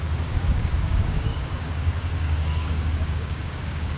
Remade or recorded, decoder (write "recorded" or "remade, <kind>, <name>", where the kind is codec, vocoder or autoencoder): remade, codec, DAC